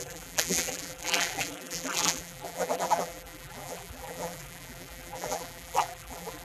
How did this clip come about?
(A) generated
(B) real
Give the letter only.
A